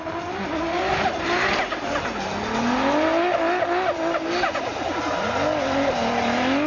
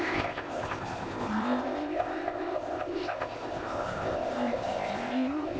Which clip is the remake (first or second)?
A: second